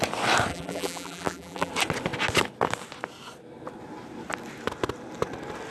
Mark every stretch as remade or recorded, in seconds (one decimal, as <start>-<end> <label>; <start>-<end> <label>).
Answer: 0.0-0.5 recorded; 0.5-1.7 remade; 1.7-5.7 recorded